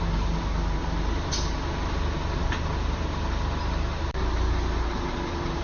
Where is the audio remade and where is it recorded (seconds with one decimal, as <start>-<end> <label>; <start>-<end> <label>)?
0.0-2.4 recorded; 2.4-4.2 remade; 4.2-5.6 recorded